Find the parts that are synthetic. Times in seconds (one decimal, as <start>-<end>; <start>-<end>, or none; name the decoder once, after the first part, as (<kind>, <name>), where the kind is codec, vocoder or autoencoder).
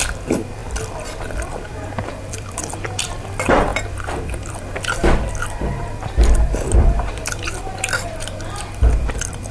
0.0-5.0 (vocoder, BigVGAN v2); 5.6-9.5